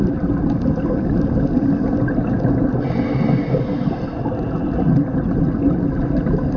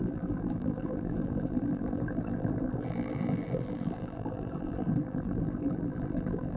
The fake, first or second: second